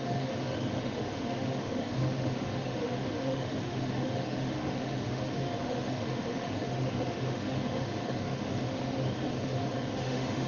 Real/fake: fake